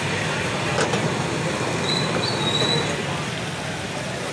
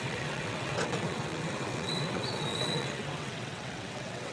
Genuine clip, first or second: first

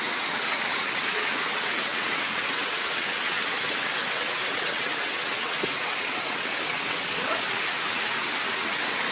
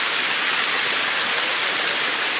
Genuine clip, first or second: second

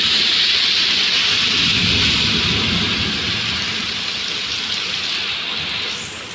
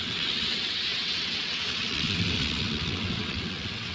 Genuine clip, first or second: first